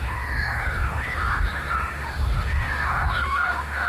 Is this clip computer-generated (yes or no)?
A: yes